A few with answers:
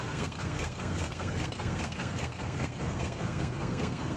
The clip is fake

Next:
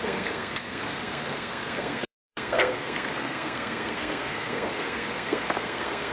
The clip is fake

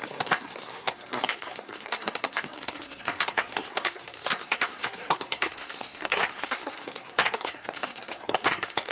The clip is fake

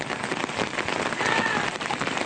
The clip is real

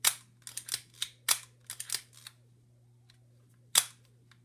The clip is real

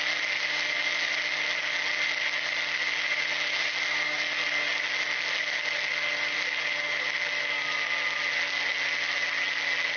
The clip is real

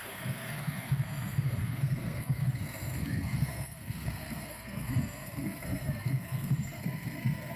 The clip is fake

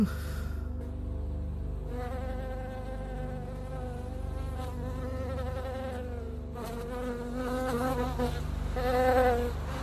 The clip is real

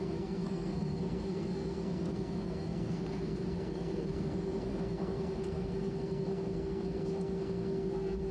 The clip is fake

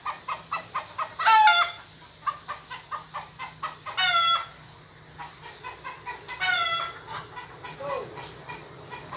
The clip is real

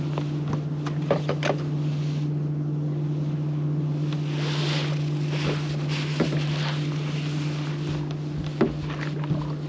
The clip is real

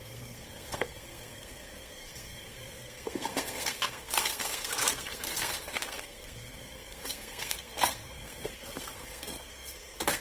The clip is fake